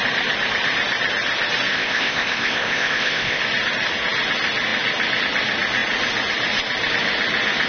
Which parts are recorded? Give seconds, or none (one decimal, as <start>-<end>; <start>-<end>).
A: 0.0-1.7; 3.4-7.7